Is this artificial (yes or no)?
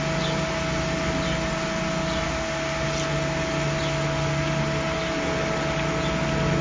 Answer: no